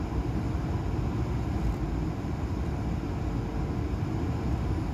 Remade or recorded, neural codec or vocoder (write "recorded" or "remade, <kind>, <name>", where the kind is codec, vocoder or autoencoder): recorded